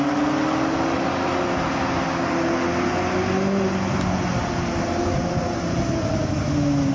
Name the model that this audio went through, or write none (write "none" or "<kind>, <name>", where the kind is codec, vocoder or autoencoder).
none